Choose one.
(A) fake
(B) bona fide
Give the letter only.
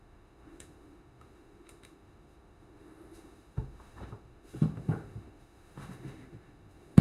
A